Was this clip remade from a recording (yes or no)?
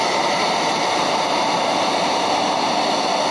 yes